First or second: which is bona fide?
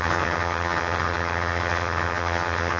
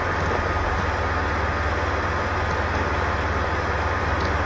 second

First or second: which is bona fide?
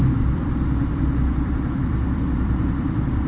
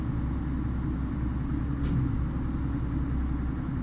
second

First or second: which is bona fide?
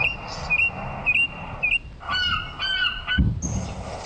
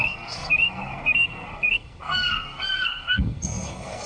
first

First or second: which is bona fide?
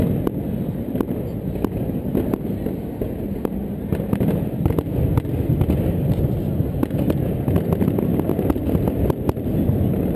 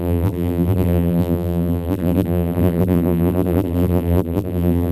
first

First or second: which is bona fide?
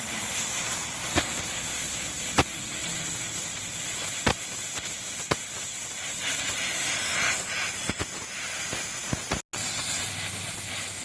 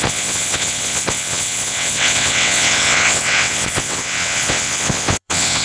first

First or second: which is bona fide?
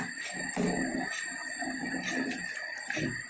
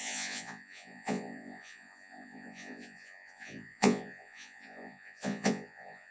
first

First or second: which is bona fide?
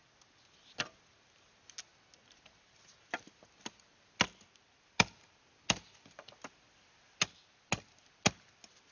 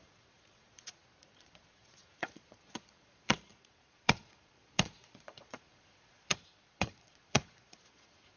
first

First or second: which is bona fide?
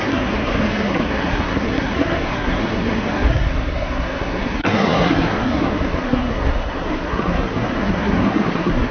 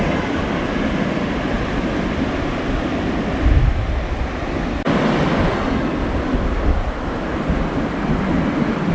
second